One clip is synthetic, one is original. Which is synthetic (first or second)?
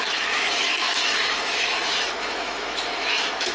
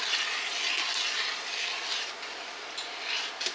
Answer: first